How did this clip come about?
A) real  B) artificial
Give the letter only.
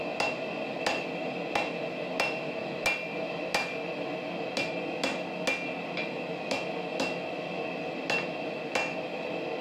A